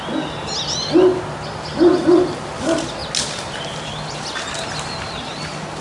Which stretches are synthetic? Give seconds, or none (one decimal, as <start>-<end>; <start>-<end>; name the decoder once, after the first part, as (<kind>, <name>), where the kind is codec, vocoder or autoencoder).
none